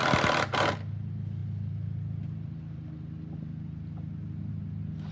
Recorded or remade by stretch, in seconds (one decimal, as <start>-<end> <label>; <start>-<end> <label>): 0.0-5.1 recorded